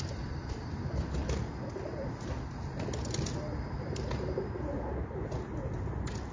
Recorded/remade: recorded